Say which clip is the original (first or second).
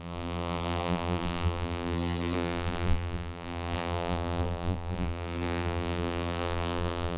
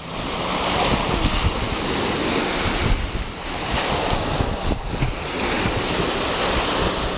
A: second